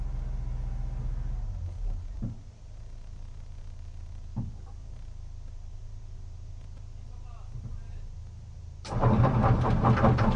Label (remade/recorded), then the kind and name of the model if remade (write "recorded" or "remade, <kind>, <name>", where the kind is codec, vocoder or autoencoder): recorded